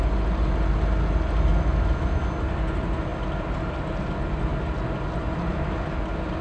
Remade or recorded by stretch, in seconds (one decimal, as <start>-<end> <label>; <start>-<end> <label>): 0.0-1.5 recorded; 1.5-2.2 remade; 2.2-6.4 recorded